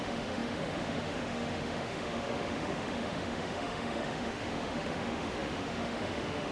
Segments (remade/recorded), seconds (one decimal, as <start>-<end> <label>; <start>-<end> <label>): 0.0-6.5 remade